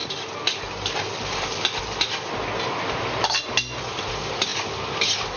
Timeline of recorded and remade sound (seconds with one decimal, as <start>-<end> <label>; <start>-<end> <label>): 0.0-1.8 remade; 1.8-5.4 recorded